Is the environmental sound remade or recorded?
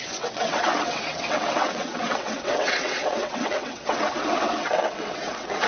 remade